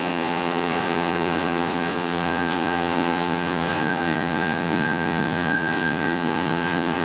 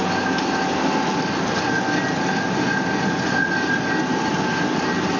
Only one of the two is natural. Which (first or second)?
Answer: second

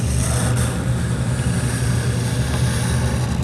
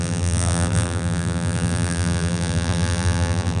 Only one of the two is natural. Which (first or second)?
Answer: first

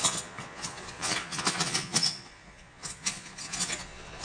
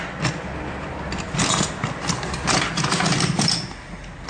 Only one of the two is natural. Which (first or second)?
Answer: second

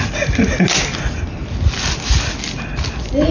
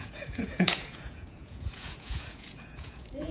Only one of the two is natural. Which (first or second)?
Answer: first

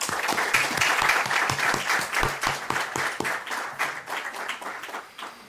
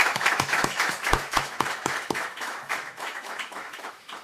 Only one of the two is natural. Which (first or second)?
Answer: first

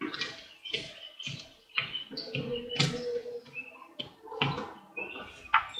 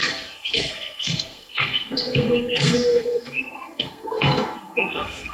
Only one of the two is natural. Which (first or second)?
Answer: first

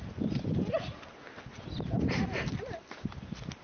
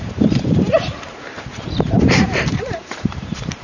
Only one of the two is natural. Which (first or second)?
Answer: first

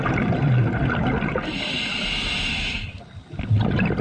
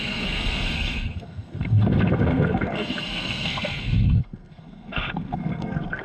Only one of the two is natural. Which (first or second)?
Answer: first